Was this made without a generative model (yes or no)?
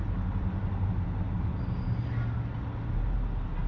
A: yes